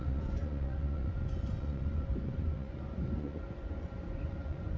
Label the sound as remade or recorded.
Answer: remade